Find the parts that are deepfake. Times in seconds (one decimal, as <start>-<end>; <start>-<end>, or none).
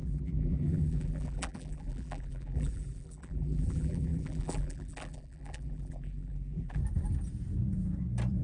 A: 0.0-6.8